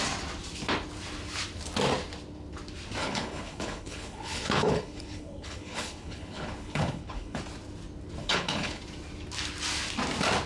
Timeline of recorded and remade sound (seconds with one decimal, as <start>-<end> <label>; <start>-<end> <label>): 0.0-3.0 recorded; 3.0-7.4 remade; 7.4-8.2 recorded; 8.2-8.8 remade; 8.8-10.5 recorded